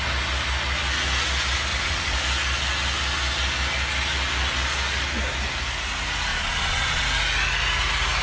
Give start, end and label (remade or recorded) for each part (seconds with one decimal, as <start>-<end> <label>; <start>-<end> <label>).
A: 0.0-1.7 recorded; 1.7-2.2 remade; 2.2-6.3 recorded; 6.3-7.0 remade; 7.0-8.2 recorded